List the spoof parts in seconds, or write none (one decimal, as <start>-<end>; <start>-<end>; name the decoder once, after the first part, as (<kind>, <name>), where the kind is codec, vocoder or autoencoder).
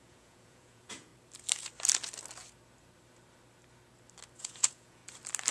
0.0-1.1 (vocoder, Vocos); 4.4-5.0